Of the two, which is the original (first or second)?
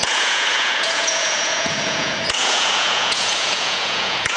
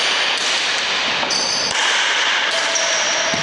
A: second